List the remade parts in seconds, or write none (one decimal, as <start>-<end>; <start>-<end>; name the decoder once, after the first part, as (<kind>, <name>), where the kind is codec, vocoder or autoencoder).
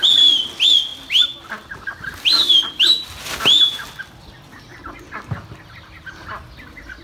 none